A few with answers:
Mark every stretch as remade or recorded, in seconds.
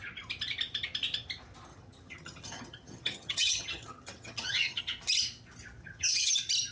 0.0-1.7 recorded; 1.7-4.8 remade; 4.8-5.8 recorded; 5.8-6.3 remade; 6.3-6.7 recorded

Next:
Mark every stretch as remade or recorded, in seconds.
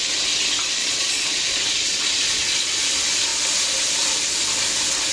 0.0-0.8 recorded; 0.8-2.8 remade; 2.8-5.1 recorded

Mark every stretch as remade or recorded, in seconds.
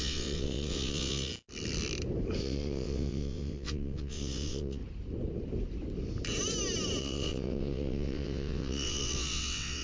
0.0-1.3 remade; 1.3-2.4 recorded; 2.4-4.8 remade; 4.8-7.0 recorded; 7.0-9.8 remade